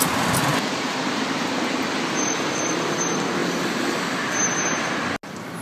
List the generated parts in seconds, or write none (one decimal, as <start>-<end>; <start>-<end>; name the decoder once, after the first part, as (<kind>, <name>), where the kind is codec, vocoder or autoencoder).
none